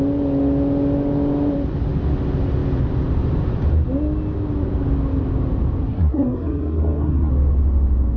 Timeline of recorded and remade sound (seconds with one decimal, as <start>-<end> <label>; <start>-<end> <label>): 0.0-5.8 recorded; 5.8-7.3 remade; 7.3-8.2 recorded